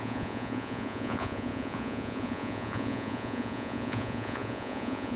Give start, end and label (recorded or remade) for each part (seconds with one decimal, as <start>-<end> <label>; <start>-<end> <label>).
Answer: 0.0-5.2 remade